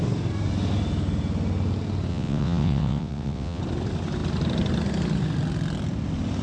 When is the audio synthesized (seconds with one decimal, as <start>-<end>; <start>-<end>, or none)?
2.1-3.6